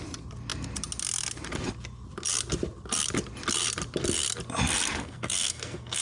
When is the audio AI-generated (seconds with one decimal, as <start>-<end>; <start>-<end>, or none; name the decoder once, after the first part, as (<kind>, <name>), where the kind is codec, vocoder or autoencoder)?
4.9-6.0 (codec, SNAC)